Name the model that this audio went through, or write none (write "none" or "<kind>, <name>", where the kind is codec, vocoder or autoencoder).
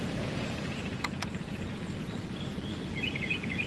vocoder, Vocos